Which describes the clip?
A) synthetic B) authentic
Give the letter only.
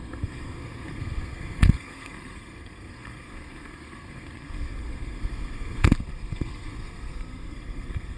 A